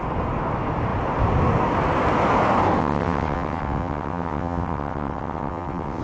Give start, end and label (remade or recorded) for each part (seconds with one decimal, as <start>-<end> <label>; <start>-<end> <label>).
0.0-2.8 recorded; 2.8-6.0 remade